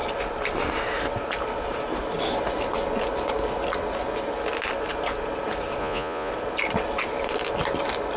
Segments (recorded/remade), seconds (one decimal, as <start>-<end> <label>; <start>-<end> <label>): 0.0-5.8 recorded; 5.8-6.3 remade; 6.3-8.2 recorded